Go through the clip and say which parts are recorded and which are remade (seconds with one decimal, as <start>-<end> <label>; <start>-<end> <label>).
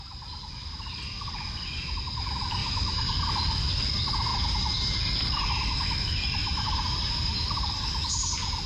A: 0.0-2.6 recorded; 2.6-3.2 remade; 3.2-4.3 recorded; 4.3-5.0 remade; 5.0-6.4 recorded; 6.4-7.7 remade; 7.7-8.7 recorded